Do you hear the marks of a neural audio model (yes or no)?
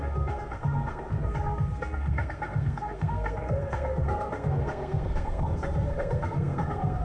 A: yes